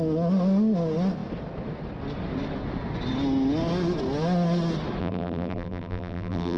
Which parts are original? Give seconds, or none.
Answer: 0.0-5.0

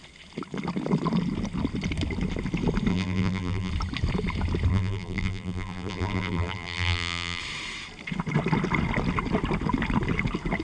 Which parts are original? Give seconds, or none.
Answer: 0.0-2.9; 3.7-4.7; 7.4-10.6